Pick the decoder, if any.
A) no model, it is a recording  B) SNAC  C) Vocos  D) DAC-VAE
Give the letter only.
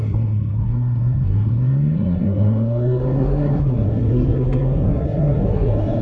B